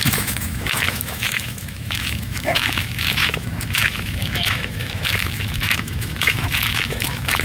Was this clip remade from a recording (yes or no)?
yes